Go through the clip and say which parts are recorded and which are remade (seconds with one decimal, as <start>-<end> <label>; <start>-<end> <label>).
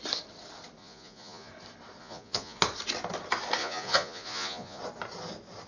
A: 0.0-0.8 recorded; 0.8-1.5 remade; 1.5-2.0 recorded; 2.0-2.6 remade; 2.6-3.6 recorded; 3.6-4.8 remade; 4.8-5.7 recorded